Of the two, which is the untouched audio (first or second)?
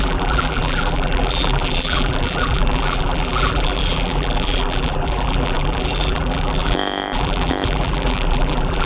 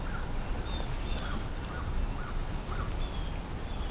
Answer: second